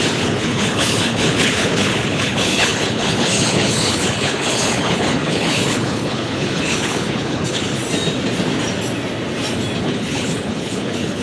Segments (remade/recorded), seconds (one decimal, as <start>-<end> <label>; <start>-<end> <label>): 0.0-7.8 remade; 7.8-9.8 recorded; 9.8-11.2 remade